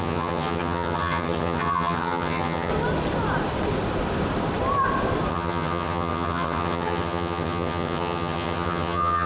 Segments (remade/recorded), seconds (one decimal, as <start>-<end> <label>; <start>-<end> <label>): 0.0-2.7 remade; 2.7-5.3 recorded; 5.3-9.3 remade